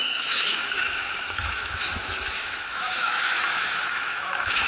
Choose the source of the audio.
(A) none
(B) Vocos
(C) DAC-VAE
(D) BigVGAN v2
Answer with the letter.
C